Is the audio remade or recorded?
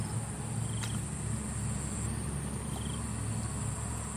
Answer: recorded